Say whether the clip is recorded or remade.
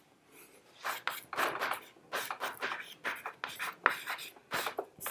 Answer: recorded